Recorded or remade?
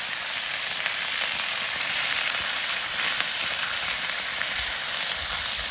remade